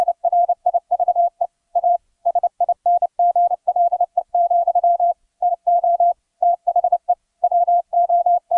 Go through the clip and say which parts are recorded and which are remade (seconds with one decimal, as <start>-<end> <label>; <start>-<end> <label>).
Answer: 0.0-2.3 remade; 2.3-3.5 recorded; 3.5-8.6 remade